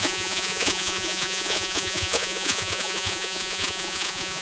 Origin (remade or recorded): remade